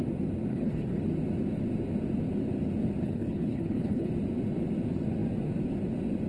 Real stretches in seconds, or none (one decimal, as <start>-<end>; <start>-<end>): 0.0-0.5; 1.0-3.0; 4.1-6.3